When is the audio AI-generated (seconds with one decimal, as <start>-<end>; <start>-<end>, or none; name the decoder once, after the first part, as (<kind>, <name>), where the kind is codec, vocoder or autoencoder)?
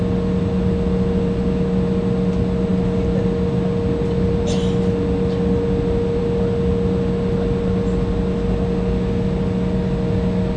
none